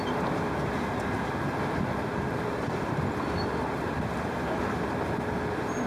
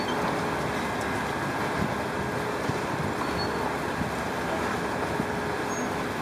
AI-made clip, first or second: first